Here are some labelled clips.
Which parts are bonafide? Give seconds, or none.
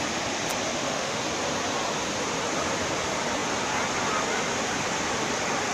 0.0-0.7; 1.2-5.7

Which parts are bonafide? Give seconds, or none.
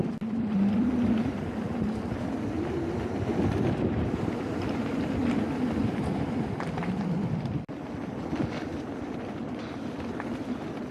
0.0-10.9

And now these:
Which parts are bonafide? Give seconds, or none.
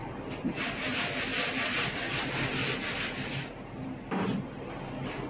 0.0-1.3; 2.2-2.6